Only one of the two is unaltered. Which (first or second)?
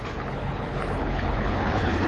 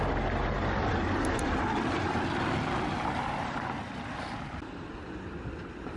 second